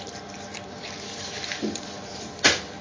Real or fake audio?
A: fake